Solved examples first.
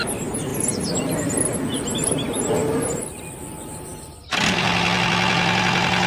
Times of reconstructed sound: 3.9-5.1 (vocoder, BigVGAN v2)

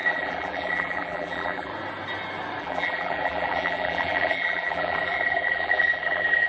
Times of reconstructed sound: 0.0-1.7 (vocoder, BigVGAN v2); 2.6-6.5

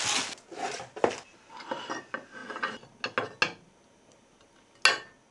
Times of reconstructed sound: none

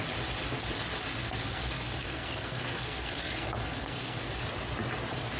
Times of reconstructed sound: 1.2-4.4 (codec, SNAC)